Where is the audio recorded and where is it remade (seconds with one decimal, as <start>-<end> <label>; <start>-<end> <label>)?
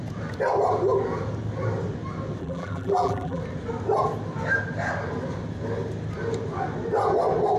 0.0-2.4 recorded; 2.4-3.4 remade; 3.4-7.6 recorded